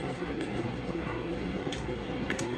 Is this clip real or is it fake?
fake